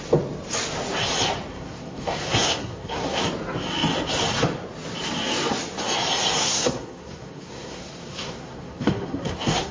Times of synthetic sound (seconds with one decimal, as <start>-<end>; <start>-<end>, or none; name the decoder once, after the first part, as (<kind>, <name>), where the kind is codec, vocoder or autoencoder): 1.5-3.2 (codec, SNAC); 6.4-9.7